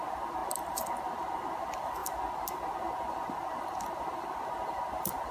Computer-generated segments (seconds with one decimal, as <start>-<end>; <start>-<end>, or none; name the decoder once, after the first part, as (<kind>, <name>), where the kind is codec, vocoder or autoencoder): none